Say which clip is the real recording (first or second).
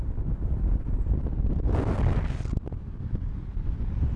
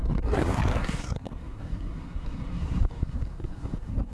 first